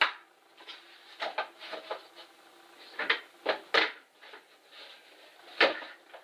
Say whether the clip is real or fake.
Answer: real